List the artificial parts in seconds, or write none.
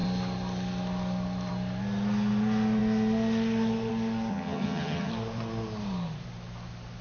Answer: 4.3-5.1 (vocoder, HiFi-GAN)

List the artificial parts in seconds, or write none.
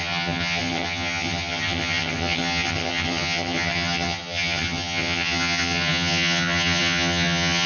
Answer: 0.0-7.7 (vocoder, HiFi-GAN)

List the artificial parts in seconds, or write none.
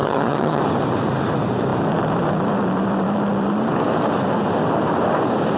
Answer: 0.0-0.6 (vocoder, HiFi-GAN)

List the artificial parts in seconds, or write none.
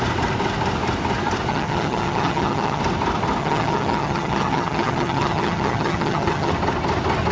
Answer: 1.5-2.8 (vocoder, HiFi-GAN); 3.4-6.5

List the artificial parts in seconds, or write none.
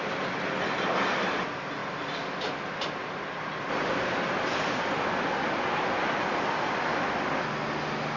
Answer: none